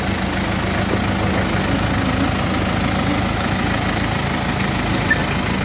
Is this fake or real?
real